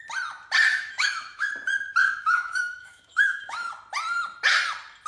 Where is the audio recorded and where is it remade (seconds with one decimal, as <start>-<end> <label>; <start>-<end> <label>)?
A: 0.0-0.7 recorded; 0.7-1.5 remade; 1.5-2.0 recorded; 2.0-3.7 remade; 3.7-5.1 recorded